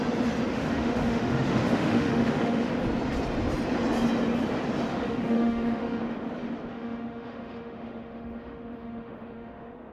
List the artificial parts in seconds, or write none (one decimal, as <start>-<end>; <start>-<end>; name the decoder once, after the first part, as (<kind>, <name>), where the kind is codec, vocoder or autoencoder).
0.5-2.7 (autoencoder, DAC-VAE); 4.9-6.0; 6.7-9.9